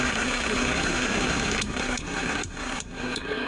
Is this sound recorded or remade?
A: remade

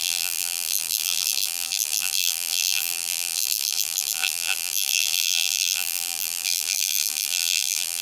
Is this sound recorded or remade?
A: remade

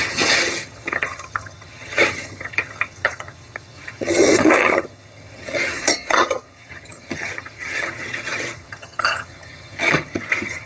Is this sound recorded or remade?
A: remade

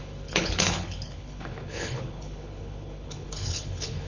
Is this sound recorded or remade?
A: remade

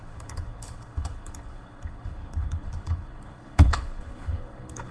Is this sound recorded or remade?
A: remade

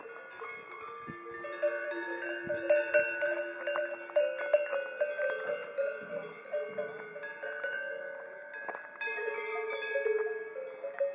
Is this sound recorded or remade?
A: recorded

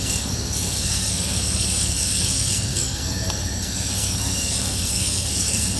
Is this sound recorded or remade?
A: remade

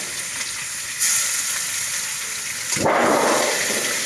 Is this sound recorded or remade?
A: recorded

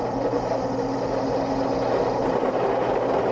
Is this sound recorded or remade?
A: recorded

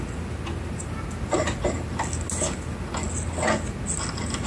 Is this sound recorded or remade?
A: recorded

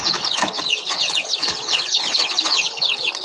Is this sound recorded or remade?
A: remade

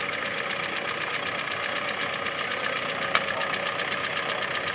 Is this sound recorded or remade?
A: recorded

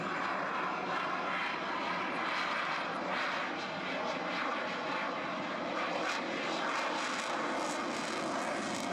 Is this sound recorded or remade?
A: recorded